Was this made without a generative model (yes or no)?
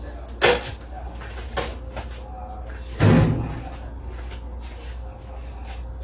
yes